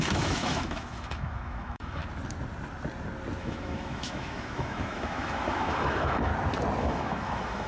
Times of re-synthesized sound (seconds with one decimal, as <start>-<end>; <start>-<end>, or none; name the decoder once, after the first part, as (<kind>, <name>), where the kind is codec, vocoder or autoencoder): 0.0-2.0 (autoencoder, DAC-VAE); 3.4-6.3; 6.8-7.7